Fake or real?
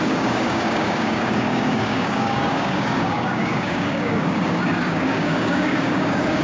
fake